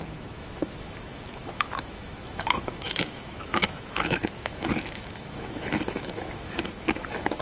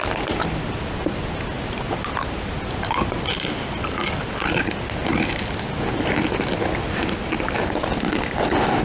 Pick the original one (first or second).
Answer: second